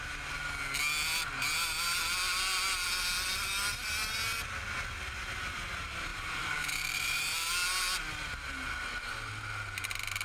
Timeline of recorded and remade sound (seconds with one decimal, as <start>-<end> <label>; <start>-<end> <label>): 0.0-6.1 recorded; 6.1-7.5 remade; 7.5-10.2 recorded